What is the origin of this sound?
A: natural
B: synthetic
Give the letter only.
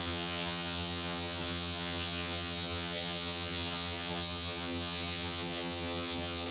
B